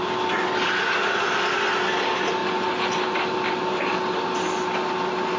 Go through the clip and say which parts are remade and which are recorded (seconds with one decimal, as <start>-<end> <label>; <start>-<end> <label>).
0.0-5.4 recorded